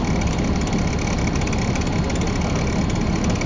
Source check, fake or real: real